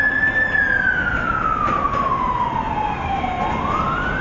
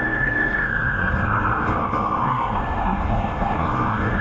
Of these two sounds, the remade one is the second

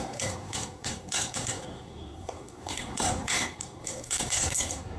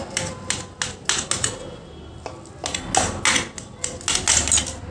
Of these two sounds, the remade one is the first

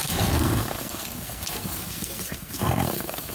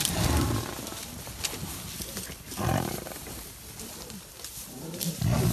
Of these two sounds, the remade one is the first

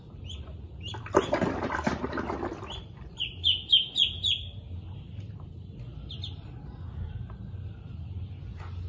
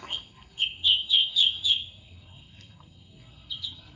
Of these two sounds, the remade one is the second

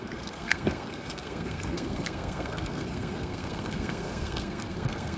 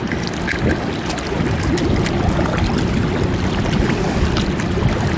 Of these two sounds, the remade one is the first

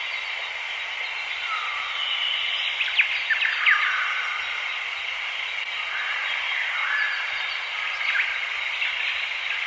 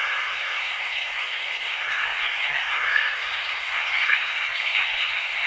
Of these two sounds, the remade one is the second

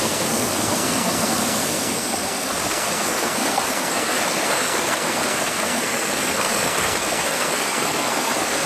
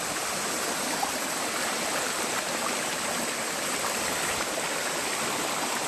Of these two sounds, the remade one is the first